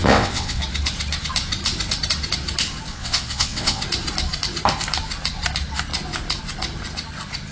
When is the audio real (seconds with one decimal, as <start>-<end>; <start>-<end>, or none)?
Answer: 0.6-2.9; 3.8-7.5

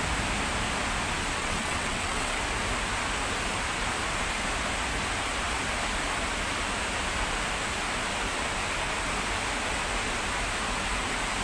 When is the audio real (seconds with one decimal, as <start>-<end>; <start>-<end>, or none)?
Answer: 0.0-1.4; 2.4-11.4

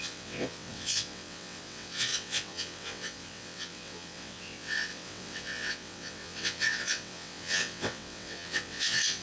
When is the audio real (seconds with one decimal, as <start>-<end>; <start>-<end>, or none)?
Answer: none